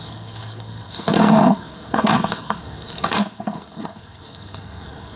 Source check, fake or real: fake